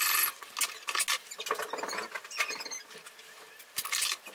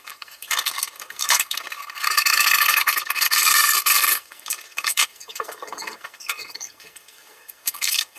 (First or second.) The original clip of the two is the first